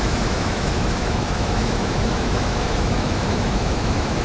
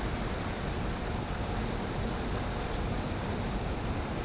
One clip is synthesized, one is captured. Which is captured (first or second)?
second